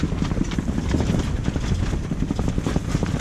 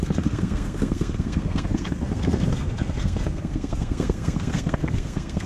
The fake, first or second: second